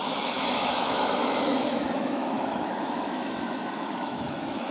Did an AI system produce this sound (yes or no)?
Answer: yes